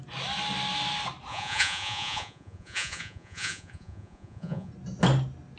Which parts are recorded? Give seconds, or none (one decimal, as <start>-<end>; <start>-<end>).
0.0-1.3; 4.7-5.6